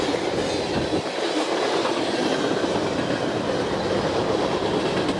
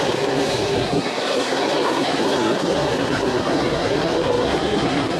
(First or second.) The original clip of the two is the first